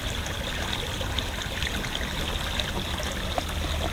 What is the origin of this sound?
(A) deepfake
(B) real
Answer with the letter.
B